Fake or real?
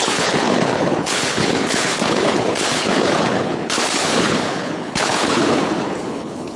fake